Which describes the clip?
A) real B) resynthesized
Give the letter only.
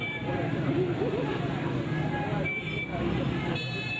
A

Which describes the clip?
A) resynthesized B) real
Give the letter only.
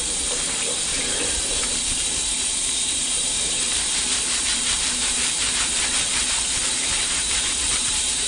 A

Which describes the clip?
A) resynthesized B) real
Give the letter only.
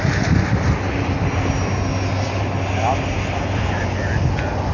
B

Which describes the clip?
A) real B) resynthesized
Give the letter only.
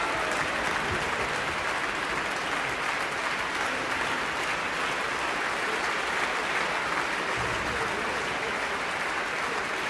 A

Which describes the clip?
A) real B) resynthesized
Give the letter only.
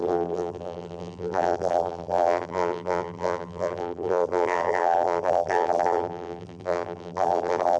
B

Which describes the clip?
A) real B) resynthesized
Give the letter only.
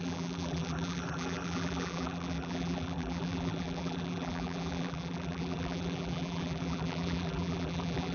B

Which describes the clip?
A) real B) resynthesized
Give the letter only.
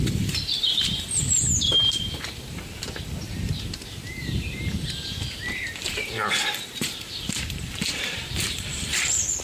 B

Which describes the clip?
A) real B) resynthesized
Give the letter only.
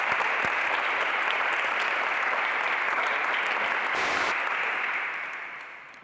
B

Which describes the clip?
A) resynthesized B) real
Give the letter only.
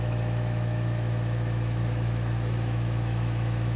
A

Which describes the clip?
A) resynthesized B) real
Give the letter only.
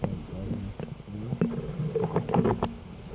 B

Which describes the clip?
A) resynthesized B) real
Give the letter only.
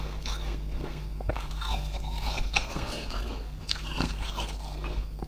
A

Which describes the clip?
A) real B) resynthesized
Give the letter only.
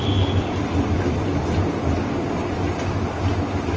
A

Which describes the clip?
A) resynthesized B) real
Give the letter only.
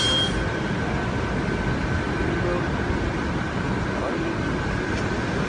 B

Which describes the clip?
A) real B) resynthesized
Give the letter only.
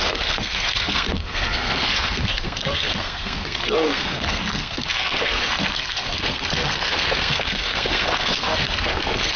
B